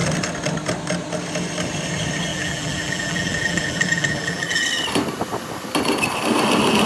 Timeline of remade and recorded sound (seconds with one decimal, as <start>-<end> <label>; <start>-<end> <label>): 0.0-2.3 recorded; 2.3-4.6 remade; 4.6-6.9 recorded

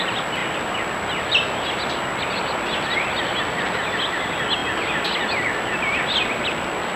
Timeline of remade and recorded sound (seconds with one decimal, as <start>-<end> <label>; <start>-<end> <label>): 0.0-7.0 recorded

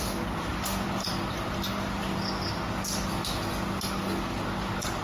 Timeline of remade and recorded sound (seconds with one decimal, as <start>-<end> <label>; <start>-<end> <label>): 0.0-0.5 recorded; 0.5-1.1 remade; 1.1-1.7 recorded; 1.7-2.2 remade; 2.2-5.0 recorded

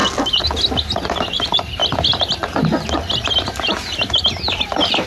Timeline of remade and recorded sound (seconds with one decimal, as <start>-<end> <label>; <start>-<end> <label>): 0.0-1.2 recorded; 1.2-1.8 remade; 1.8-3.6 recorded; 3.6-5.1 remade

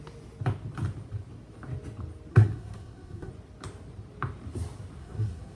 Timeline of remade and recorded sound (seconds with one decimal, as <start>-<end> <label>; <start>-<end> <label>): 0.0-2.3 recorded; 2.3-3.3 remade; 3.3-5.0 recorded; 5.0-5.6 remade

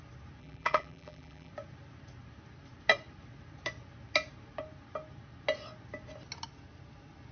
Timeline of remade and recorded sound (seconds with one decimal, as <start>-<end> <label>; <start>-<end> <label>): 0.0-0.4 recorded; 0.4-1.5 remade; 1.5-7.3 recorded

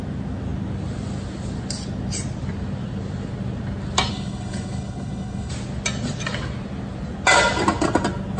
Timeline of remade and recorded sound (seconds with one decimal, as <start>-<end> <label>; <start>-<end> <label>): 0.0-4.1 recorded; 4.1-5.5 remade; 5.5-8.4 recorded

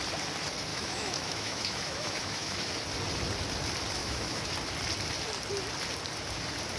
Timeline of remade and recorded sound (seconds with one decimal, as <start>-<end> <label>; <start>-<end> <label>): 0.0-0.7 recorded; 0.7-2.7 remade; 2.7-4.0 recorded; 4.0-4.5 remade; 4.5-6.8 recorded